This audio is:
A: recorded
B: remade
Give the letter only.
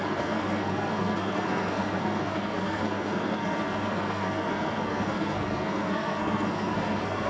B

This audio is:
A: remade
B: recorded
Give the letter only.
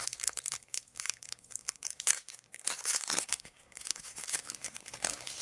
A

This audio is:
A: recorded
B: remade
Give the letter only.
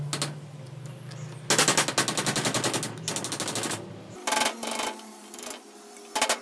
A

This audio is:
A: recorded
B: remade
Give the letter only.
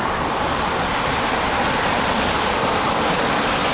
A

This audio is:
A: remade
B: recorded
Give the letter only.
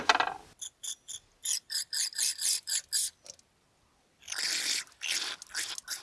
B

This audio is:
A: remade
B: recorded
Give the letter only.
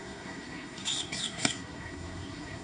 A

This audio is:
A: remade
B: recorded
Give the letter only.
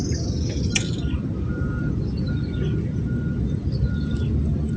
B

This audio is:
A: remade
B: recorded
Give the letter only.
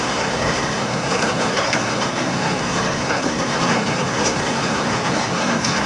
A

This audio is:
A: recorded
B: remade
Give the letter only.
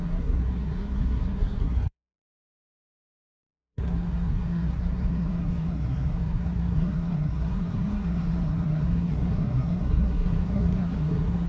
B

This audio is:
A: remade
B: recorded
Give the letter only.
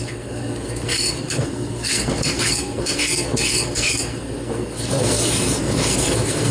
A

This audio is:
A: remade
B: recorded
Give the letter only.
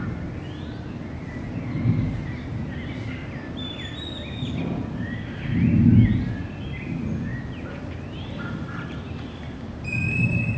B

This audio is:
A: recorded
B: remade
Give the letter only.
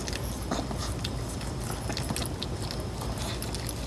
A